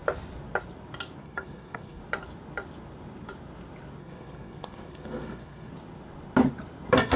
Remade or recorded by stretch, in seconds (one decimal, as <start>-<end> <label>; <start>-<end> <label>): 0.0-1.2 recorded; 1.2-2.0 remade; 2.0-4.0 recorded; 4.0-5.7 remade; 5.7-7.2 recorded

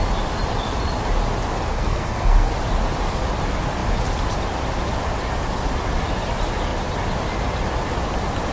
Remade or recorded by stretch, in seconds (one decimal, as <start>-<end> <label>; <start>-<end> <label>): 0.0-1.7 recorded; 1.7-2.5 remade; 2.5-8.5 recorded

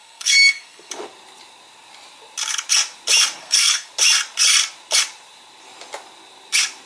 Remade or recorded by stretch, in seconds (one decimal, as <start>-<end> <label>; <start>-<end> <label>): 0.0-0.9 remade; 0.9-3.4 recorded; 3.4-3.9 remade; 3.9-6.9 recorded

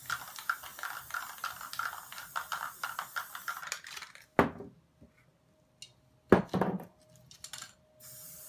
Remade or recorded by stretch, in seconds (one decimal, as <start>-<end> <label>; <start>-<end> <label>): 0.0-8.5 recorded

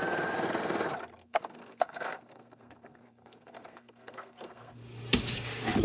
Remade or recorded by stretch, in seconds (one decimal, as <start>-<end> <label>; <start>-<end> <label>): 0.0-1.2 recorded; 1.2-4.7 remade; 4.7-5.8 recorded

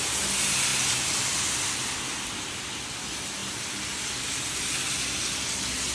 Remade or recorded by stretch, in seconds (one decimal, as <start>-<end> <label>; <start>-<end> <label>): 0.0-5.9 recorded

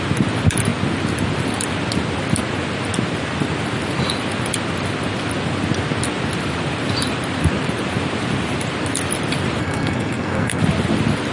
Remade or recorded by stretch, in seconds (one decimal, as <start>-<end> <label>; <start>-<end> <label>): 0.0-9.6 recorded; 9.6-10.6 remade; 10.6-11.3 recorded